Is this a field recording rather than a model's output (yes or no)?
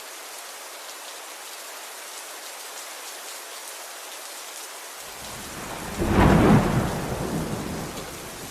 yes